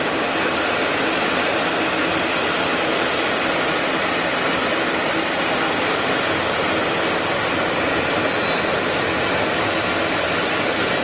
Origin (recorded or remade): recorded